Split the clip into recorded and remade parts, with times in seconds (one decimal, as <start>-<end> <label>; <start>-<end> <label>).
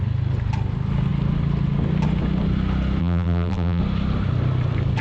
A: 0.0-3.0 recorded; 3.0-3.8 remade; 3.8-5.0 recorded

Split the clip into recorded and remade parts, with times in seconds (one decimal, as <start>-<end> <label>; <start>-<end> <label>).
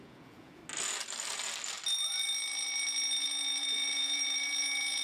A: 0.0-0.6 remade; 0.6-3.2 recorded; 3.2-5.0 remade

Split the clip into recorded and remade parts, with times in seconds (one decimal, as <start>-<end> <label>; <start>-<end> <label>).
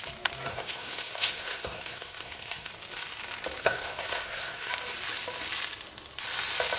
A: 0.0-0.5 recorded; 0.5-2.7 remade; 2.7-3.6 recorded; 3.6-4.7 remade; 4.7-6.8 recorded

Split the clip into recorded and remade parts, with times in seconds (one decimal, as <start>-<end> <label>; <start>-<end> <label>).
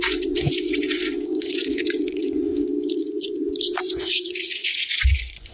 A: 0.0-2.5 remade; 2.5-3.0 recorded; 3.0-5.5 remade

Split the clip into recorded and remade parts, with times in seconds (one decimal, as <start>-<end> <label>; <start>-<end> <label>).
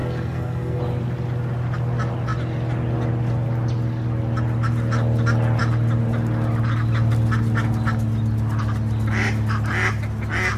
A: 0.0-0.8 remade; 0.8-10.6 recorded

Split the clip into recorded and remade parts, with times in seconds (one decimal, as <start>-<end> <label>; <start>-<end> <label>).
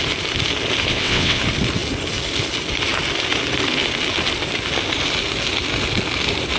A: 0.0-0.9 recorded; 0.9-1.4 remade; 1.4-6.6 recorded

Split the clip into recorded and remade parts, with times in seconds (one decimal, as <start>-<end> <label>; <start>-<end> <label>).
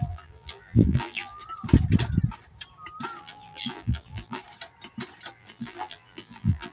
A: 0.0-1.4 remade; 1.4-3.2 recorded; 3.2-4.4 remade; 4.4-5.3 recorded; 5.3-6.7 remade